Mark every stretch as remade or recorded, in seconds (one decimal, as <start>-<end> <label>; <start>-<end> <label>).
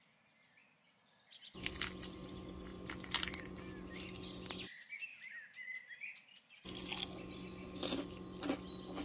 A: 0.0-2.7 recorded; 2.7-3.4 remade; 3.4-9.0 recorded